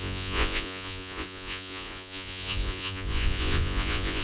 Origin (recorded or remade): remade